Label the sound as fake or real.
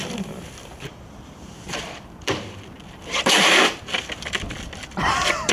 fake